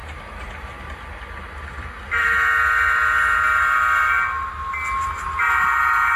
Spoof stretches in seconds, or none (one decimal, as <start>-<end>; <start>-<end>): 0.0-0.7